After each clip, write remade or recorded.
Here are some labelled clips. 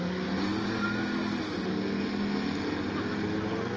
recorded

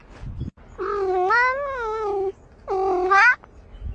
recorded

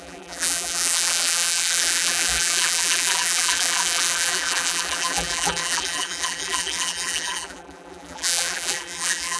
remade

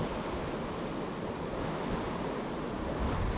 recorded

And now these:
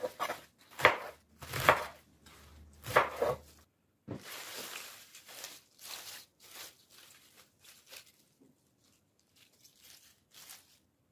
remade